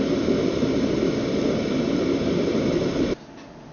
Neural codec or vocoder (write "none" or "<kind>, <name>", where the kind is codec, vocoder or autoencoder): none